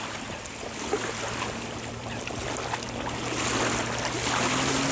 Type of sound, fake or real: real